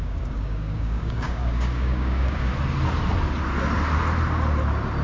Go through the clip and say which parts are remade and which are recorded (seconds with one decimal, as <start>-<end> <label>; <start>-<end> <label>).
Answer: 0.0-2.5 remade; 2.5-5.0 recorded